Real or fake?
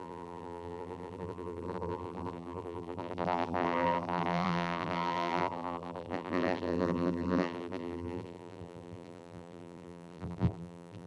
fake